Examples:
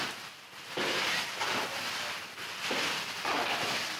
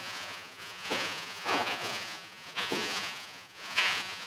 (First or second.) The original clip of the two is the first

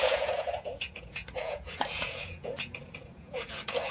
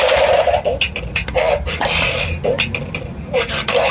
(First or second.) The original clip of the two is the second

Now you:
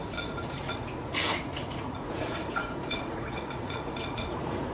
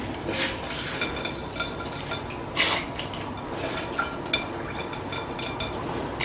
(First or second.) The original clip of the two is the second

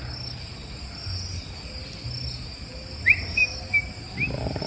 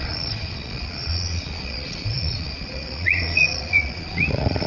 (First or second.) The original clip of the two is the first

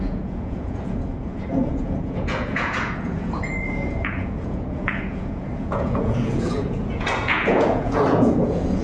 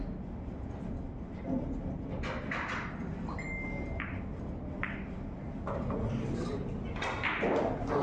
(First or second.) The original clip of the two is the second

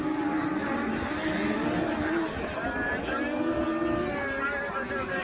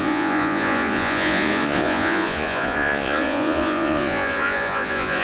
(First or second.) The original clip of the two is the first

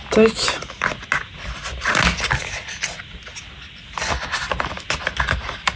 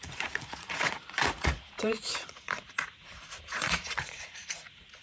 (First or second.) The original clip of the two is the first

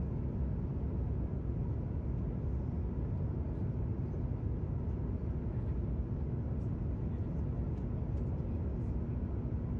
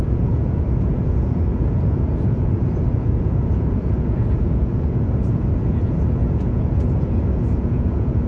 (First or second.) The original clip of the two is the first